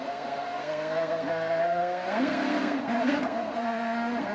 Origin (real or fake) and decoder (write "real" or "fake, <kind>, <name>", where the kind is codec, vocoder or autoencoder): fake, codec, SNAC